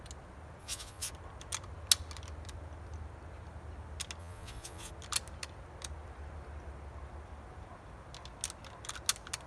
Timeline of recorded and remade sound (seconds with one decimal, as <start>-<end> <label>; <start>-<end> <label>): 0.0-0.6 recorded; 0.6-1.1 remade; 1.1-4.2 recorded; 4.2-4.9 remade; 4.9-9.5 recorded